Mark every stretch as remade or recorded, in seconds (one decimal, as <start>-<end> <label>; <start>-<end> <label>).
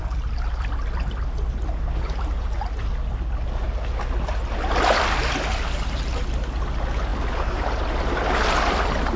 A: 0.0-9.2 recorded